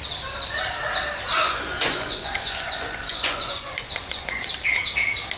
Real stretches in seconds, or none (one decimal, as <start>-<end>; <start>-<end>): 0.0-1.3; 4.5-5.4